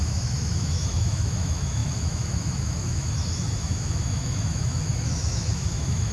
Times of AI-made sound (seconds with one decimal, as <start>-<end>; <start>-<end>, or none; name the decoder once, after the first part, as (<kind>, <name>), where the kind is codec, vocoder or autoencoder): 0.0-6.1 (autoencoder, DAC-VAE)